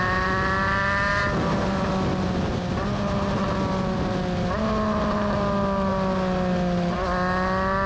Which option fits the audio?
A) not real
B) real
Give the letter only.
B